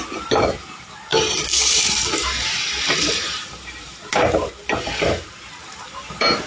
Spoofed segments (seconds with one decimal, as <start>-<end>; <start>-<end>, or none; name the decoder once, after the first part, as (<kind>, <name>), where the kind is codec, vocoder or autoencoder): 1.1-4.5 (vocoder, BigVGAN v2); 4.9-6.5